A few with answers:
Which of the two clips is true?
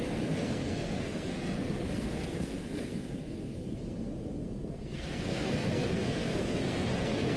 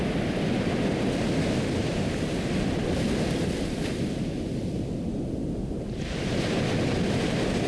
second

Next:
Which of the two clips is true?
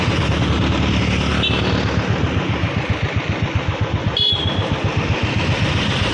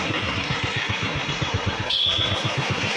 first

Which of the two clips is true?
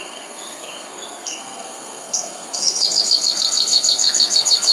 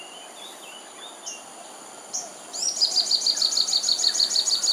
second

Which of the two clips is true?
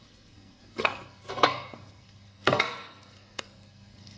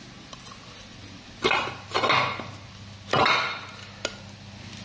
second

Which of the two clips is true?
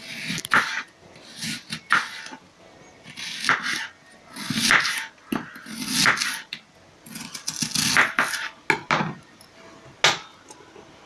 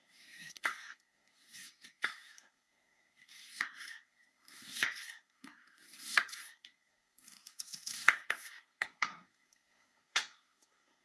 first